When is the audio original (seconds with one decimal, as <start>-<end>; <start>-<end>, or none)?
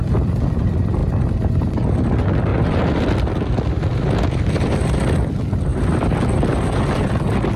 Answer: 0.0-2.5; 5.3-5.7; 7.1-7.6